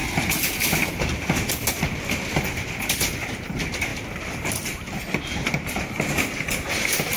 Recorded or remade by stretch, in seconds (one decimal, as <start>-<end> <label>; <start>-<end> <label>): 0.0-7.2 recorded